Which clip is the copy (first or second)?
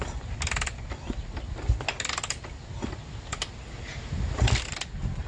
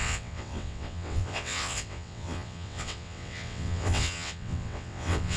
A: second